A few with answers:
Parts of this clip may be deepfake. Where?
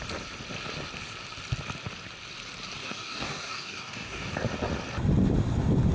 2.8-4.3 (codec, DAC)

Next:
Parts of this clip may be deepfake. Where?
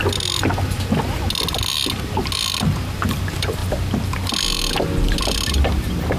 none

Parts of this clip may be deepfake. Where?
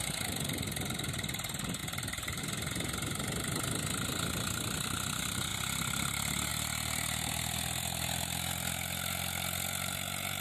1.8-2.4 (vocoder, BigVGAN v2)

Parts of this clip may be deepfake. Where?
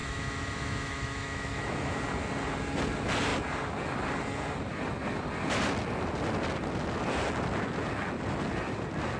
0.0-2.0 (autoencoder, DAC-VAE)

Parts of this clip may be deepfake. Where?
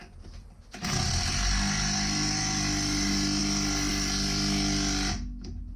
none